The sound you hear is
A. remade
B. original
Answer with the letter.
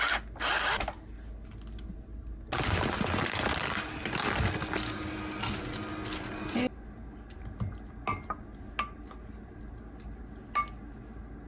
B